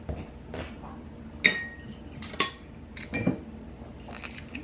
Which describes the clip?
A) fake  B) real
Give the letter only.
B